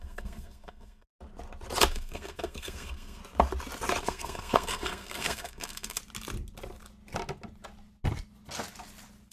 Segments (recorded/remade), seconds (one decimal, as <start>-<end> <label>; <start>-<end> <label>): 0.0-1.1 remade; 1.1-1.9 recorded; 1.9-3.2 remade; 3.2-4.0 recorded; 4.0-6.0 remade; 6.0-9.3 recorded